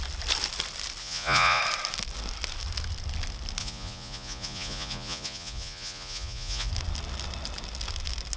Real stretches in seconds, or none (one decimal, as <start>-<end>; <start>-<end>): 0.0-1.0; 1.6-3.6; 6.7-8.4